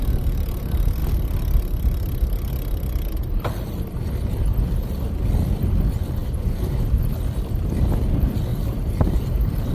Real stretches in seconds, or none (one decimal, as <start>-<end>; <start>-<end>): 0.0-6.2; 7.0-8.5